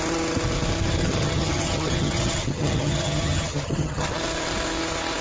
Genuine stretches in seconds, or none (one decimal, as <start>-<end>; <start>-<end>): 0.0-1.0; 4.1-5.2

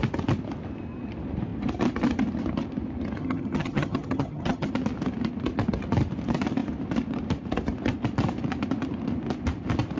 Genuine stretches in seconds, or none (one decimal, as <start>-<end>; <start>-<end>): 0.0-3.2; 4.7-10.0

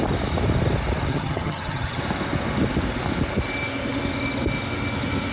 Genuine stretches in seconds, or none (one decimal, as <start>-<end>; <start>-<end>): 0.0-1.1; 2.0-5.3

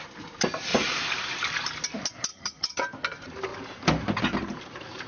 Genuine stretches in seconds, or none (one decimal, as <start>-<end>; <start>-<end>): 0.0-2.3; 2.8-5.1

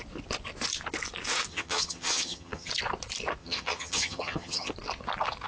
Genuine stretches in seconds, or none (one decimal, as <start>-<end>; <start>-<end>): 0.0-1.5; 2.7-3.4; 4.7-5.5

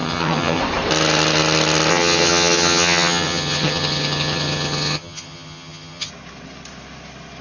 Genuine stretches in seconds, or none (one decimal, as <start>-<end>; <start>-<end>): 0.6-1.9; 6.1-7.4